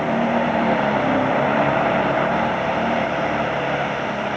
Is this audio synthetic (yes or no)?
yes